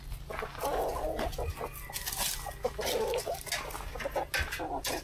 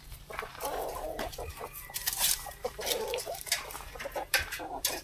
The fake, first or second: second